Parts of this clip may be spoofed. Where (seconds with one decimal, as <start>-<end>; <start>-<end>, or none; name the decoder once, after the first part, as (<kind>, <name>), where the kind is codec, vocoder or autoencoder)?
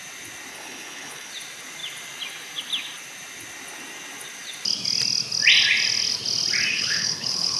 0.5-1.3 (codec, HILCodec); 6.7-7.6